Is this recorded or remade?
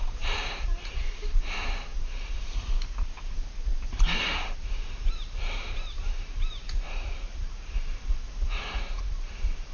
remade